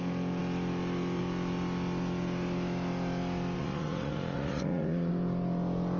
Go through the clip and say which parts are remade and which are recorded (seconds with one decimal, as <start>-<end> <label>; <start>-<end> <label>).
0.0-3.6 recorded; 3.6-5.1 remade; 5.1-6.0 recorded